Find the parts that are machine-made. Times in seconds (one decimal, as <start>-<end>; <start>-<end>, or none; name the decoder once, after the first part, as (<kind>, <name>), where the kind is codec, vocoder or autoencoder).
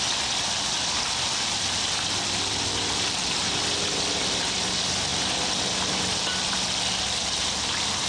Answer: none